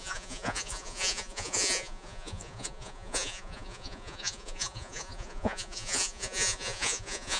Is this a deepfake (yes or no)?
yes